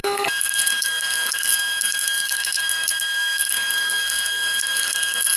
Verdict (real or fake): fake